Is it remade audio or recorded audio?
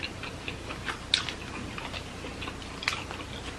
recorded